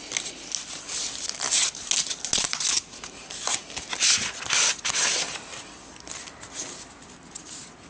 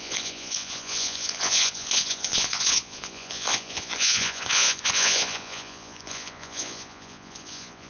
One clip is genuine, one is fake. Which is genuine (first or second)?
first